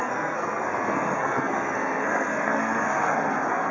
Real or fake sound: fake